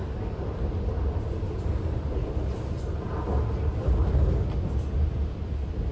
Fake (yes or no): no